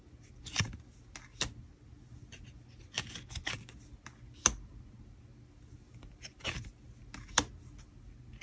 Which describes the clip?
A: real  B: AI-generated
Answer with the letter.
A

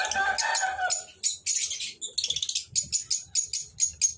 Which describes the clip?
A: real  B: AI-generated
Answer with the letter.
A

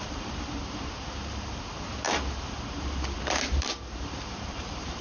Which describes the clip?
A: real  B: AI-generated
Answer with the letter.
B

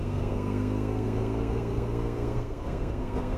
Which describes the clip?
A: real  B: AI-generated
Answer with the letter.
B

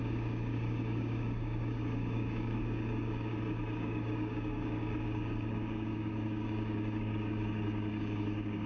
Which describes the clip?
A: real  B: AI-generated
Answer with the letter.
B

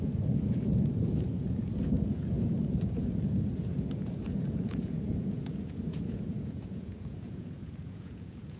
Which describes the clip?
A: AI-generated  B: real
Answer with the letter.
A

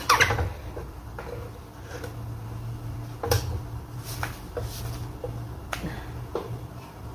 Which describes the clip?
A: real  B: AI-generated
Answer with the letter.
A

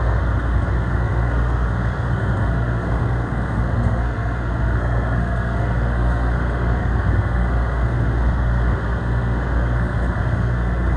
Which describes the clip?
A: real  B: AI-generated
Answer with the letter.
B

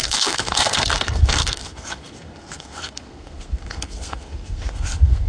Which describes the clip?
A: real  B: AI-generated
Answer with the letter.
B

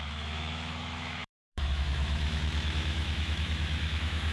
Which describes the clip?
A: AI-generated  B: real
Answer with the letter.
A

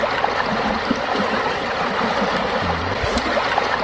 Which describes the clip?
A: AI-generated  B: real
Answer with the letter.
B